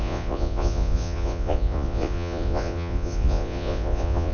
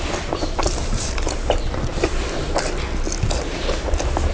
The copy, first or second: first